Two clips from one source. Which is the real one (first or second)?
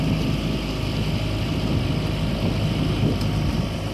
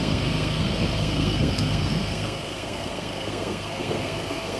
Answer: first